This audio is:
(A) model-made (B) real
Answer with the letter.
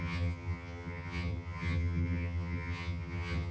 A